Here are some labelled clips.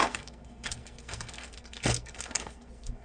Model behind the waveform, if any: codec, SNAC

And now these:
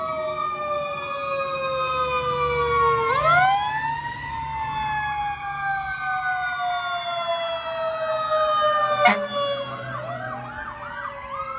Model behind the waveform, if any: none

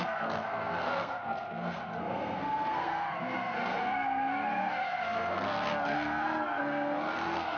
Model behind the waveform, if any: codec, SNAC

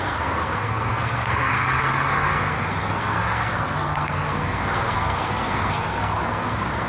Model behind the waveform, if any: codec, SNAC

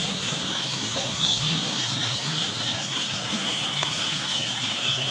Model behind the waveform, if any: codec, SNAC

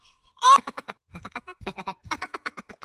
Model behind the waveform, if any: codec, SNAC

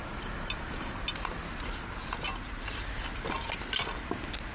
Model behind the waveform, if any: none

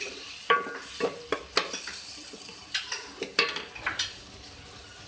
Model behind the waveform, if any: none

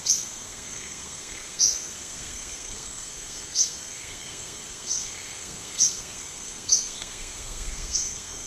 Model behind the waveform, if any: codec, SNAC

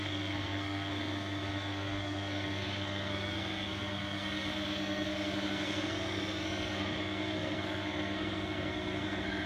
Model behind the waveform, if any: codec, SNAC